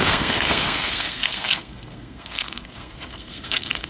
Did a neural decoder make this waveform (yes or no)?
yes